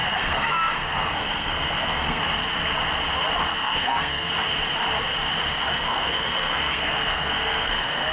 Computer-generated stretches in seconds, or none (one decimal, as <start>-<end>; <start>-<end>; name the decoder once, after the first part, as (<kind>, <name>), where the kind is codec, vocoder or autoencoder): 0.0-2.2 (codec, SNAC); 3.5-4.3; 5.7-8.1